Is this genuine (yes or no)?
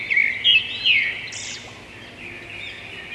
yes